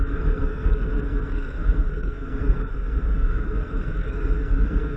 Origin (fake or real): fake